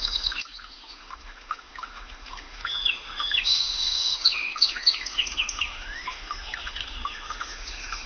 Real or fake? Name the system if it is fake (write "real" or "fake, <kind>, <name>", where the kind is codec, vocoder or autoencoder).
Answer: fake, autoencoder, DAC-VAE